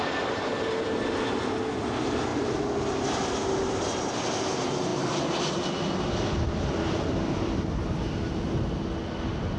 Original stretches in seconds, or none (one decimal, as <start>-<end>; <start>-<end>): 0.0-9.6